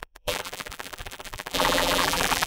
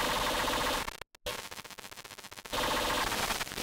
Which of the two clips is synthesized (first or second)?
first